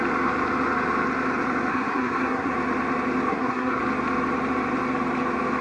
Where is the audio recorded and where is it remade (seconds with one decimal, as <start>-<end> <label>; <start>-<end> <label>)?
0.0-1.7 recorded; 1.7-2.5 remade; 2.5-3.3 recorded; 3.3-3.8 remade; 3.8-5.6 recorded